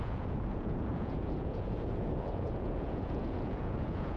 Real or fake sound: fake